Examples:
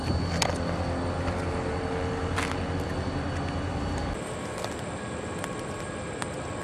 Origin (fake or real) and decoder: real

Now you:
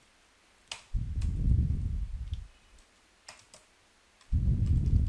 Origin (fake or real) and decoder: real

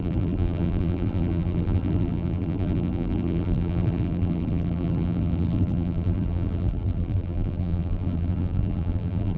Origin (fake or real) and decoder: fake, vocoder, BigVGAN v2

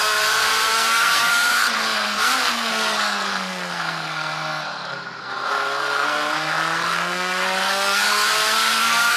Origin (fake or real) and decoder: fake, codec, SNAC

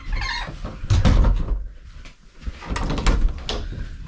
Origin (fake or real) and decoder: real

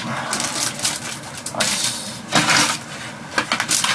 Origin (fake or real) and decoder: real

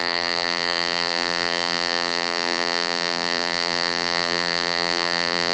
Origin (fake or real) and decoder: fake, vocoder, BigVGAN v2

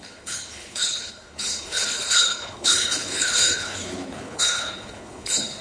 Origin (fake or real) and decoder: fake, codec, HILCodec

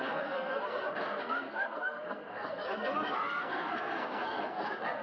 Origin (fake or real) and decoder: fake, codec, SNAC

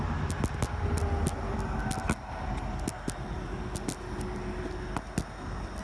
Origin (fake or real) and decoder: real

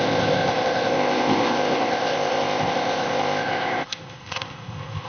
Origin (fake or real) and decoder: fake, codec, ZipCodec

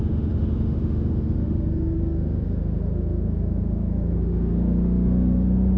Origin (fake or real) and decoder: fake, autoencoder, DAC-VAE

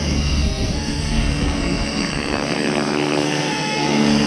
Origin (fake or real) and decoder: fake, codec, SNAC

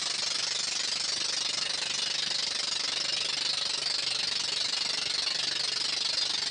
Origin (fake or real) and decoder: real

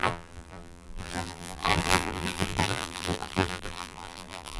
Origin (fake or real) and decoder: fake, vocoder, BigVGAN v2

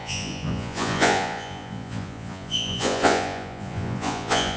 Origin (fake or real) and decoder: fake, vocoder, Vocos